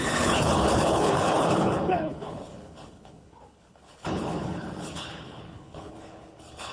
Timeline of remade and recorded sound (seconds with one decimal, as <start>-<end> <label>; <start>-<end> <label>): 0.0-6.7 remade